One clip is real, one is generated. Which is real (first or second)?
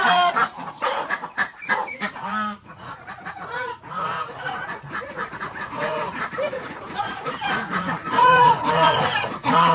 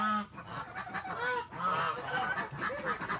second